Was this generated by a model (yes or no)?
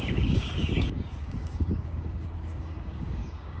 yes